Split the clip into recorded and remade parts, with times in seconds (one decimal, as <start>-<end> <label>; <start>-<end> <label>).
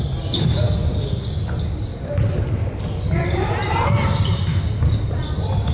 0.0-1.9 recorded; 1.9-2.8 remade; 2.8-3.6 recorded; 3.6-4.6 remade; 4.6-5.7 recorded